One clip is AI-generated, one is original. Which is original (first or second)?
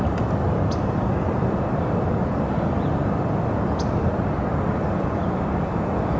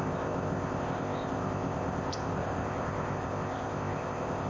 first